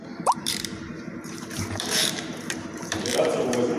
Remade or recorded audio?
remade